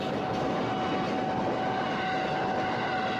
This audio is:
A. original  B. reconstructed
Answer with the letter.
A